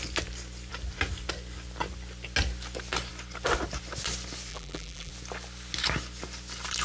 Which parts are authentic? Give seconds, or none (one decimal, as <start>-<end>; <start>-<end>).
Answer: 0.0-4.5; 5.1-6.8